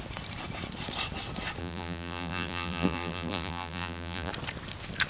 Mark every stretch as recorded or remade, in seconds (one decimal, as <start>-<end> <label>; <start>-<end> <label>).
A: 0.0-1.6 recorded; 1.6-4.3 remade; 4.3-5.1 recorded